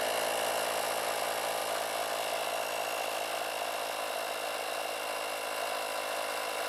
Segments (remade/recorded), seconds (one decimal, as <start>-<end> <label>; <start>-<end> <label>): 0.0-6.7 recorded

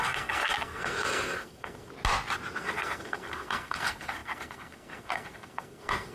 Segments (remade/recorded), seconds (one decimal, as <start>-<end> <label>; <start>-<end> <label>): 0.0-1.9 remade; 1.9-2.6 recorded; 2.6-6.1 remade

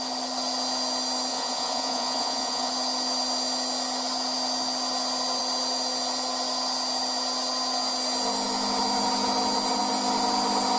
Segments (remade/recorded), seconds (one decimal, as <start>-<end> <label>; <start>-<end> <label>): 0.0-1.3 recorded; 1.3-2.7 remade; 2.7-10.8 recorded

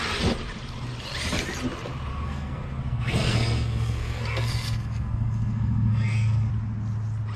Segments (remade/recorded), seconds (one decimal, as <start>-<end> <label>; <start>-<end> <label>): 0.0-2.1 recorded; 2.1-6.5 remade; 6.5-7.4 recorded

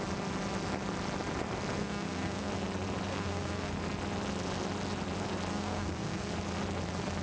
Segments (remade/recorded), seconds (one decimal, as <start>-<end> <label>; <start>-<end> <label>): 0.0-1.8 recorded; 1.8-2.5 remade; 2.5-3.1 recorded; 3.1-3.7 remade; 3.7-5.5 recorded; 5.5-6.3 remade; 6.3-7.2 recorded

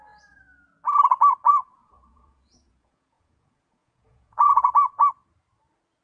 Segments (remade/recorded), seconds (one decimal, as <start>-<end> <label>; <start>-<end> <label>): 0.0-1.5 recorded; 1.5-5.1 remade; 5.1-6.0 recorded